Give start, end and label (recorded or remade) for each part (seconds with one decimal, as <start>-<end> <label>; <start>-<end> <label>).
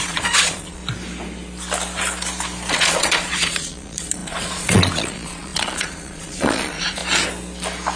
0.0-0.8 remade; 0.8-2.7 recorded; 2.7-7.0 remade; 7.0-8.0 recorded